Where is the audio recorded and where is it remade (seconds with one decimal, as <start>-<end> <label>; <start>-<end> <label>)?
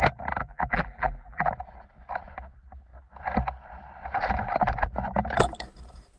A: 0.0-0.4 recorded; 0.4-1.5 remade; 1.5-6.2 recorded